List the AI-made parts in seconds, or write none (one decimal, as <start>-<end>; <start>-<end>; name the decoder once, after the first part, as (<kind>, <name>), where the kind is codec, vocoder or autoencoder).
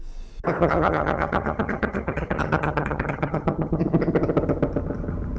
0.6-3.8 (vocoder, HiFi-GAN)